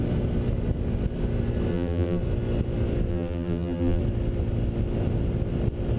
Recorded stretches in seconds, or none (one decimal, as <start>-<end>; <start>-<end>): 0.0-1.7; 2.2-3.1; 4.0-6.0